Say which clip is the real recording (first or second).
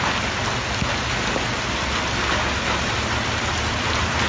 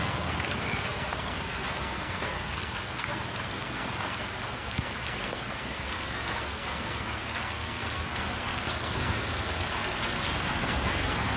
first